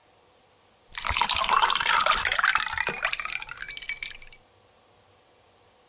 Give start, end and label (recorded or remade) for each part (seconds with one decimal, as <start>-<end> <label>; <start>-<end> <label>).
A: 0.0-5.9 recorded